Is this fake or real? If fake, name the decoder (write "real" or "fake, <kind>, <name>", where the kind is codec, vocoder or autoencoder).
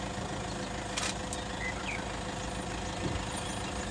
real